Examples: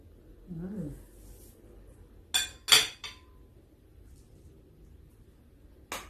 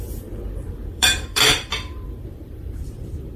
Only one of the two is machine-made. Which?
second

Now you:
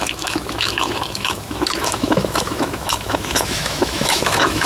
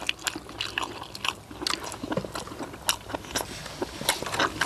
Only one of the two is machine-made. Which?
first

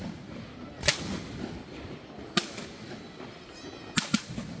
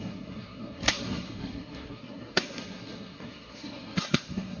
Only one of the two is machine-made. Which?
second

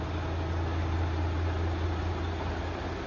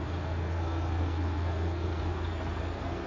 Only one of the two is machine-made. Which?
second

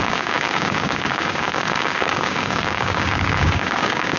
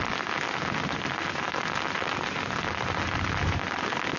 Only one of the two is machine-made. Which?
first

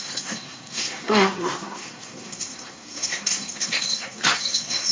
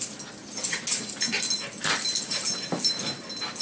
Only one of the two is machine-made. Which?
first